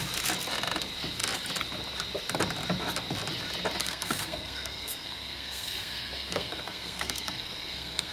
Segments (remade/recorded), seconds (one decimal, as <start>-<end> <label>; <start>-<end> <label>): 0.0-3.8 recorded; 3.8-8.1 remade